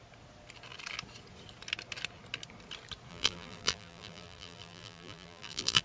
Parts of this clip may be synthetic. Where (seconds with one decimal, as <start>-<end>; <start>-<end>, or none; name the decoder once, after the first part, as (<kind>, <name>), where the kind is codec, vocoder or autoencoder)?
3.1-5.8 (vocoder, BigVGAN v2)

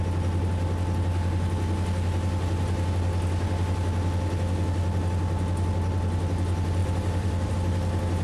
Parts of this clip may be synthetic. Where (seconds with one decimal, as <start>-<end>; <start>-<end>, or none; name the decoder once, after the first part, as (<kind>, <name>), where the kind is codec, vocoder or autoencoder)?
6.8-7.5 (vocoder, BigVGAN v2)

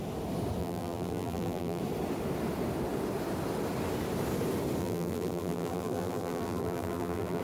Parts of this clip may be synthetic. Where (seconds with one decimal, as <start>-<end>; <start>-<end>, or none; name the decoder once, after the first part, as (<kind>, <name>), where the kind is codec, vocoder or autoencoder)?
0.6-1.8 (vocoder, BigVGAN v2); 4.8-7.4

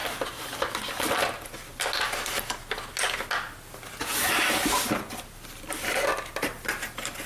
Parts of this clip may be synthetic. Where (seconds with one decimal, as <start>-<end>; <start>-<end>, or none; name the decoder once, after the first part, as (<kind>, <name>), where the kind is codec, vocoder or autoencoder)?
none

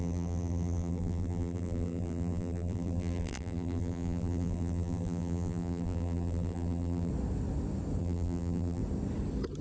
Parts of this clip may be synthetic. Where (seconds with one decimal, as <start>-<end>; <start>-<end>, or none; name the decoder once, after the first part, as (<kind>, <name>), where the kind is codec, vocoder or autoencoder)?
0.0-7.1 (vocoder, BigVGAN v2); 8.0-8.8

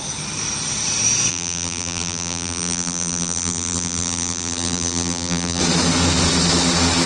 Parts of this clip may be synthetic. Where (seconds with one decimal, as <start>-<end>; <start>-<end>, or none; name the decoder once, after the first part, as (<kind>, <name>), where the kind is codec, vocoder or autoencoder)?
1.3-5.6 (vocoder, BigVGAN v2)

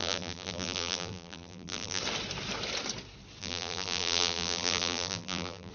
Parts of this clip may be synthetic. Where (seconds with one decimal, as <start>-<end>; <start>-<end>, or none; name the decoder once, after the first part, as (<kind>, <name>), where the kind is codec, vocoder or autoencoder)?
0.0-2.0 (vocoder, BigVGAN v2); 3.4-5.7